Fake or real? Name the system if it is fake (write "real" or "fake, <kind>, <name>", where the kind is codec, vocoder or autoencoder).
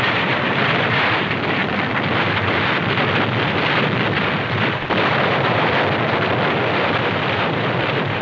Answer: fake, vocoder, BigVGAN v2